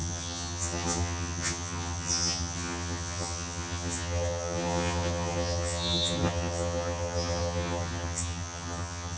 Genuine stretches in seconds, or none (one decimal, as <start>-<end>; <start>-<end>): none